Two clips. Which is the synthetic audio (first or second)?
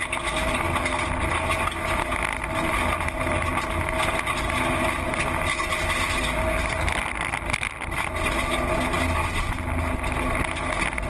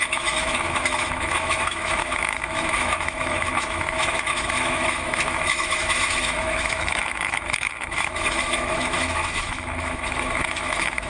second